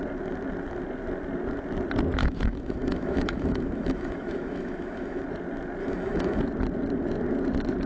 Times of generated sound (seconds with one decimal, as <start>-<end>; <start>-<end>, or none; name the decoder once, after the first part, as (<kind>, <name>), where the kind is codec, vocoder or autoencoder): 2.2-5.2 (autoencoder, DAC-VAE); 5.8-6.4